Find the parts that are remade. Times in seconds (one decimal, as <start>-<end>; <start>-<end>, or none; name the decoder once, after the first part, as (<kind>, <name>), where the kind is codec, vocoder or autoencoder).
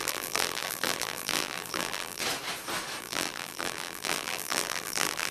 0.0-2.2 (vocoder, BigVGAN v2); 3.0-5.3